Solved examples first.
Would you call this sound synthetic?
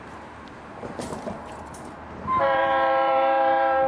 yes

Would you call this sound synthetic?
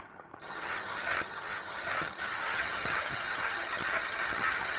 yes